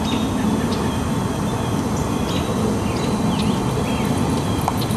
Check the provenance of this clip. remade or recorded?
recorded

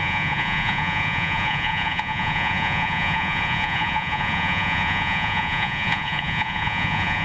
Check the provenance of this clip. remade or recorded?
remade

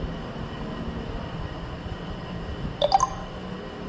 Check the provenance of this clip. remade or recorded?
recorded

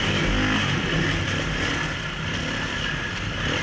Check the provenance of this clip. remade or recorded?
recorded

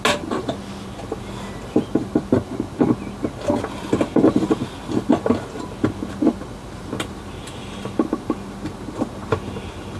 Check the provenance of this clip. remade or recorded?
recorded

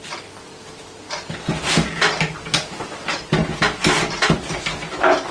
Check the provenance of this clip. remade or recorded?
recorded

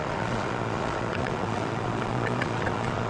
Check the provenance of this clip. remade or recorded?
remade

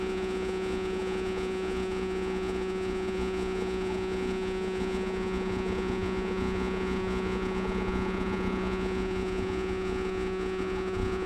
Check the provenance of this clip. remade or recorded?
remade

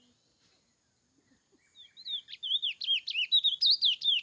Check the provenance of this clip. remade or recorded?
recorded